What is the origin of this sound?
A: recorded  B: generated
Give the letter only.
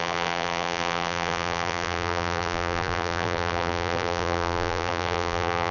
B